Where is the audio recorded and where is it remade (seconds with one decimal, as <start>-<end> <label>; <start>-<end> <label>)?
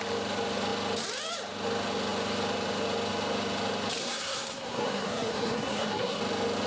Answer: 0.0-4.0 recorded; 4.0-6.2 remade; 6.2-6.7 recorded